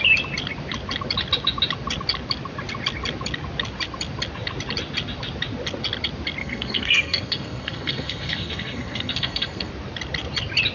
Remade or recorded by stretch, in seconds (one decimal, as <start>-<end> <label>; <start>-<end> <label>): 0.0-6.4 recorded; 6.4-9.7 remade; 9.7-10.7 recorded